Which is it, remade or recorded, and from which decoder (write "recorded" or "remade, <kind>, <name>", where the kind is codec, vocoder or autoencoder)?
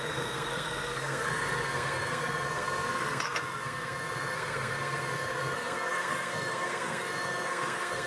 remade, codec, SNAC